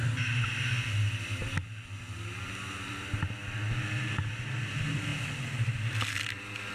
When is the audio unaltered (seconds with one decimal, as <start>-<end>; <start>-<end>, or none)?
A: 0.0-6.7